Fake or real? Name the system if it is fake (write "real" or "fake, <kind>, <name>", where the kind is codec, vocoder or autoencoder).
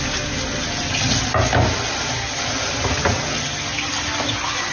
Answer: real